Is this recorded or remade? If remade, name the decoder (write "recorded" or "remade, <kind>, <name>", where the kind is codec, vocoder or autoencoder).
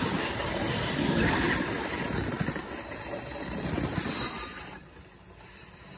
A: recorded